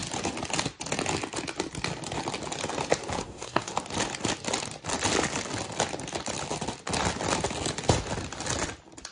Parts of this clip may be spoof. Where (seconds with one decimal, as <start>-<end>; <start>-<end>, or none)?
3.2-3.7